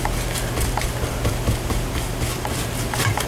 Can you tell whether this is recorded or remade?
recorded